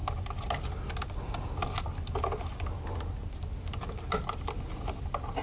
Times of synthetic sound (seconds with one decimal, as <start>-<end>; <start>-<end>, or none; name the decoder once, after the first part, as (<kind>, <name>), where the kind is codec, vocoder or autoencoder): none